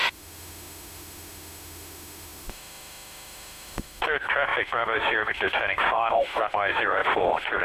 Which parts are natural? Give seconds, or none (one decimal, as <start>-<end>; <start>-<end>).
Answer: none